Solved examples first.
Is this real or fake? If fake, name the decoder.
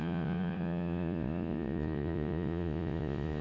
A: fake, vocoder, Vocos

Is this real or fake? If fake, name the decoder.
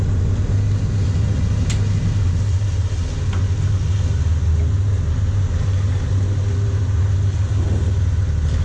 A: real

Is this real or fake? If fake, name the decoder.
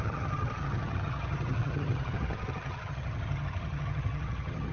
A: fake, vocoder, HiFi-GAN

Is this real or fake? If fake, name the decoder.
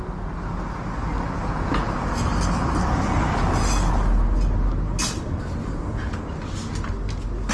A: real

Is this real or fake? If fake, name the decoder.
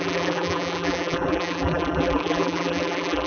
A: fake, vocoder, BigVGAN v2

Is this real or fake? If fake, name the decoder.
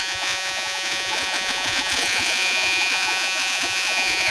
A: fake, vocoder, Vocos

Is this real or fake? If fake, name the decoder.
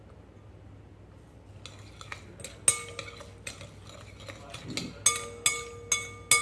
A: real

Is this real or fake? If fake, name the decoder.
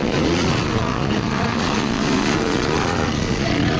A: fake, vocoder, Vocos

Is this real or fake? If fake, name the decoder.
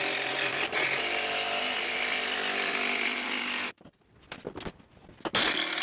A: real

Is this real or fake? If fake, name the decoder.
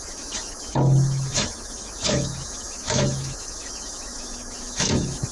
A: fake, autoencoder, DAC-VAE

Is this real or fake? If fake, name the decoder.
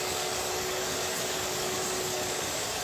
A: fake, codec, DAC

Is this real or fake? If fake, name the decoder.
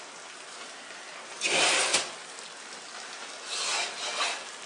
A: real